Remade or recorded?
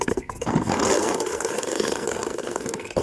remade